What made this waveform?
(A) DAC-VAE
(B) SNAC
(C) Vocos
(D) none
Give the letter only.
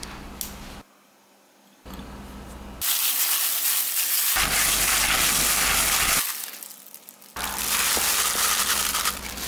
D